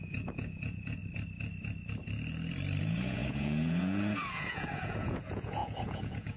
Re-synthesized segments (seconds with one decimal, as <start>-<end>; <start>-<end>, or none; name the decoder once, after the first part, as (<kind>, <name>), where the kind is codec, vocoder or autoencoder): 0.0-1.0 (vocoder, Vocos); 2.8-6.4